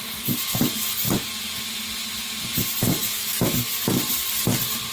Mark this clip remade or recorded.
recorded